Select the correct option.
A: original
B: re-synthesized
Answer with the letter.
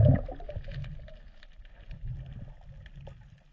A